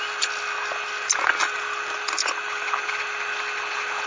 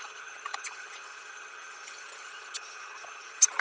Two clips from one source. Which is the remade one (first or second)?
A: second